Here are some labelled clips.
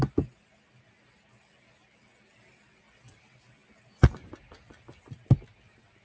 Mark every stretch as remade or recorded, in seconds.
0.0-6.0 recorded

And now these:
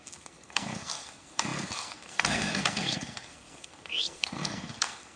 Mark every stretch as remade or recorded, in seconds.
0.0-5.2 remade

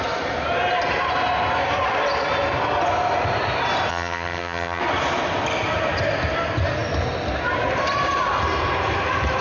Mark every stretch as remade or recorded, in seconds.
0.0-3.9 recorded; 3.9-4.8 remade; 4.8-9.4 recorded

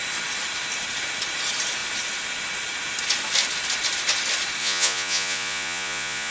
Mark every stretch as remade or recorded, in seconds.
0.0-4.6 recorded; 4.6-6.3 remade

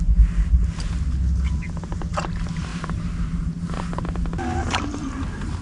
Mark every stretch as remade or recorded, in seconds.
0.0-2.7 recorded; 2.7-3.8 remade; 3.8-5.6 recorded

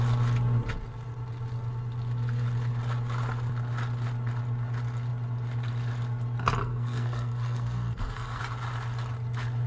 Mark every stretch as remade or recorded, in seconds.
0.0-6.6 recorded; 6.6-8.4 remade; 8.4-9.7 recorded